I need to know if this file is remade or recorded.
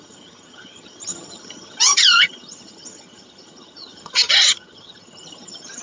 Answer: remade